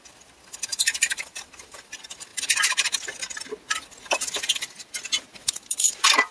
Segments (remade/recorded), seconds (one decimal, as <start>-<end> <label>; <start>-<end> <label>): 0.0-0.7 recorded; 0.7-1.9 remade; 1.9-6.3 recorded